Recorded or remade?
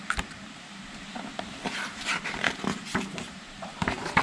remade